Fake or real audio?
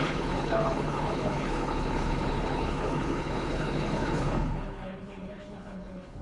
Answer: fake